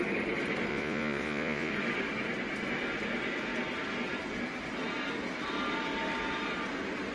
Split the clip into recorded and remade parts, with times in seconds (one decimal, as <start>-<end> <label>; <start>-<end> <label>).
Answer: 0.0-0.7 recorded; 0.7-1.7 remade; 1.7-7.1 recorded